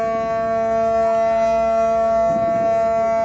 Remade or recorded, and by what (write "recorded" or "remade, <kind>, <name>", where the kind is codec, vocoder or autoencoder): recorded